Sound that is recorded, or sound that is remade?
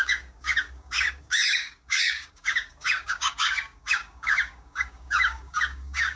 remade